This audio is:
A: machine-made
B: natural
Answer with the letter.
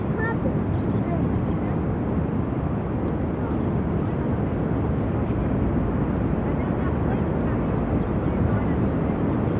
B